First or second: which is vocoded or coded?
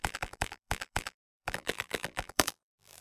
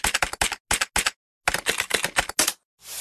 first